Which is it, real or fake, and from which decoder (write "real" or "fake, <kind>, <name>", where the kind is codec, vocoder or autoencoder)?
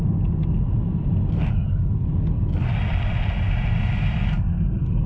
real